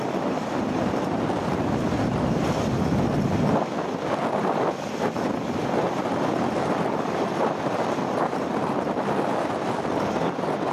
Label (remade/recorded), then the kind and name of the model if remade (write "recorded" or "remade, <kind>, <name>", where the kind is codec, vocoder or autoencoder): recorded